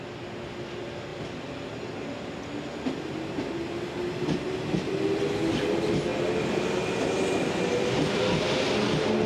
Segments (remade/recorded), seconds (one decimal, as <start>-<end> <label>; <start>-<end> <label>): 0.0-9.3 recorded